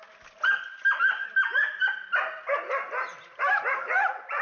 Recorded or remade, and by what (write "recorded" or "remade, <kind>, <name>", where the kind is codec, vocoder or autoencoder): recorded